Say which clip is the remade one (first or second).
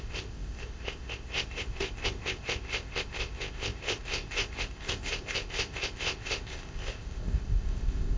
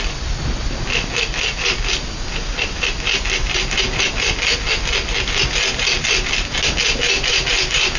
first